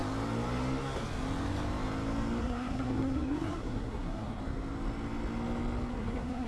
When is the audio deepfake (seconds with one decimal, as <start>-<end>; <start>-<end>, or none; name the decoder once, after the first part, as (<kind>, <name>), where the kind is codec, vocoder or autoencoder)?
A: 2.4-4.4 (codec, SNAC); 5.9-6.5